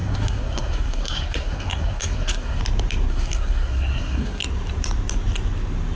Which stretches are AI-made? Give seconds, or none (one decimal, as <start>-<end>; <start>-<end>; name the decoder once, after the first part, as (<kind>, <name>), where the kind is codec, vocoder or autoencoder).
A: 0.0-2.6 (codec, SNAC); 3.1-4.4